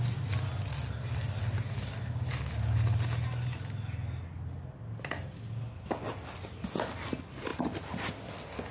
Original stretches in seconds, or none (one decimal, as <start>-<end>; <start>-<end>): 0.0-8.7